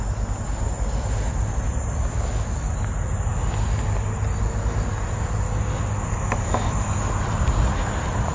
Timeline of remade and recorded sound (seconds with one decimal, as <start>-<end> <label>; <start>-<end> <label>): 0.0-8.3 recorded